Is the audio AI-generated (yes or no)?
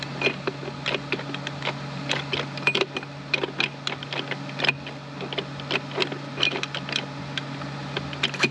no